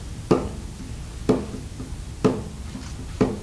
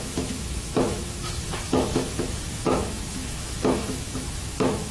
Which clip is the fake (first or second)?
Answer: second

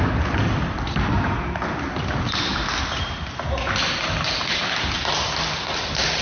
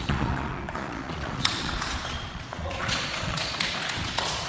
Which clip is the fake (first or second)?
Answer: second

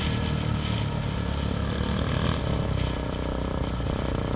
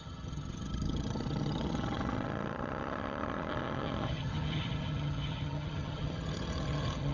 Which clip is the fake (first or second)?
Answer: second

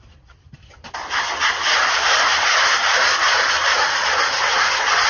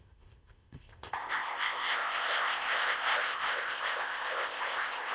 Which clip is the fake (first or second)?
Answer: second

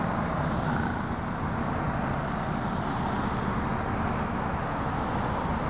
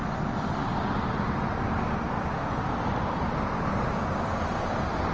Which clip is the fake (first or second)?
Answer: second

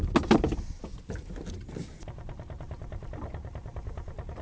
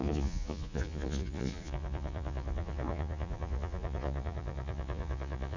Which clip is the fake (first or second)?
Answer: second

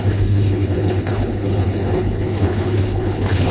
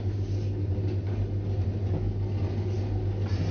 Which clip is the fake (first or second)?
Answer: first